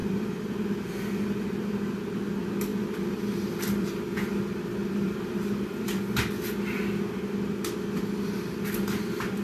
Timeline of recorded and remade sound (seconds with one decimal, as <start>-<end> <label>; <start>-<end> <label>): 0.0-1.8 remade; 1.8-2.7 recorded; 2.7-4.3 remade; 4.3-4.8 recorded; 4.8-6.0 remade; 6.0-9.4 recorded